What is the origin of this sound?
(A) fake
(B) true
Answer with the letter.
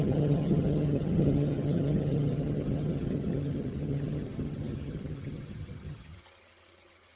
A